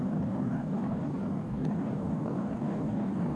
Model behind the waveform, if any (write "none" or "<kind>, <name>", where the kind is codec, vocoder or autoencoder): codec, DAC